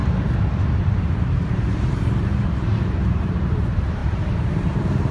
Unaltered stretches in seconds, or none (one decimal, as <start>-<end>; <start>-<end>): none